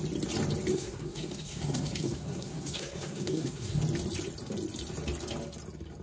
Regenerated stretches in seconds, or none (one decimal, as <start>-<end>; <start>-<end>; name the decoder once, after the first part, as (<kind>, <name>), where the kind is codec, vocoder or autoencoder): 0.7-3.8 (codec, SNAC)